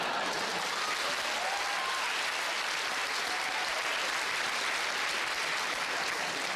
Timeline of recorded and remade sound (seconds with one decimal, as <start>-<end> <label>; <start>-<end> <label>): 0.0-6.6 recorded

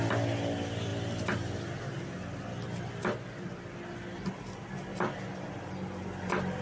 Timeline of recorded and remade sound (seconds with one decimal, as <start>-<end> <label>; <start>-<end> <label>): 0.0-6.6 recorded